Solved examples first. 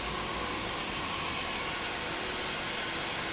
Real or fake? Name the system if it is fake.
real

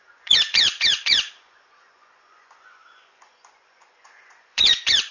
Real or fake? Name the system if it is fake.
fake, vocoder, Vocos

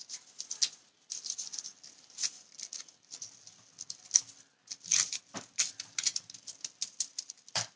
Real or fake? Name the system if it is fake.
real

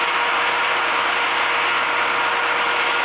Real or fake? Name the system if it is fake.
real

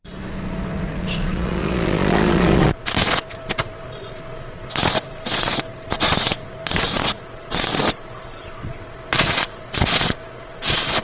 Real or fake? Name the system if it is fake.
fake, vocoder, Vocos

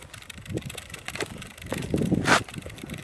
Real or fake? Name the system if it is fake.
real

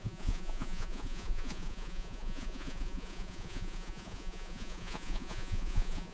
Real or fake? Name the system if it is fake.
fake, vocoder, Vocos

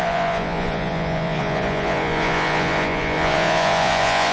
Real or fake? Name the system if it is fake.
fake, vocoder, Vocos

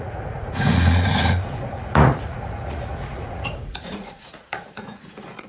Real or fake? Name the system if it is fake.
fake, vocoder, Vocos